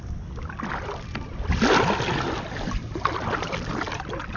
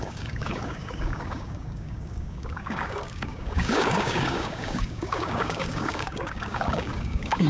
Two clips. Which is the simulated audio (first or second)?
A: second